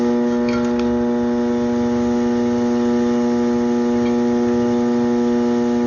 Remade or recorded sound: recorded